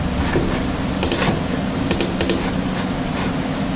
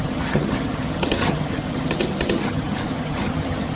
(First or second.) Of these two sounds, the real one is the first